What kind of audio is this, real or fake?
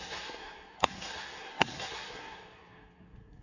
fake